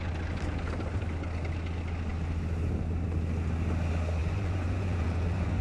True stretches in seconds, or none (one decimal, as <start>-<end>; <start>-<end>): 0.0-4.2